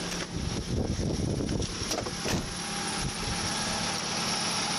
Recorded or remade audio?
recorded